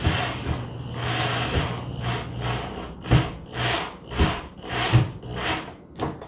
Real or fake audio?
real